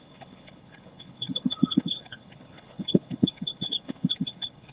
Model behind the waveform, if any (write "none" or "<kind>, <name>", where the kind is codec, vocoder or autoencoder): codec, HILCodec